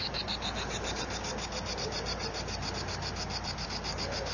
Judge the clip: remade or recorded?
recorded